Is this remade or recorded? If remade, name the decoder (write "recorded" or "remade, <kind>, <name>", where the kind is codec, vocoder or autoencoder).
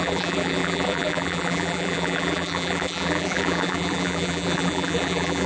remade, vocoder, BigVGAN v2